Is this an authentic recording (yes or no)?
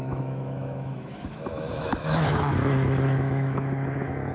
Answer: no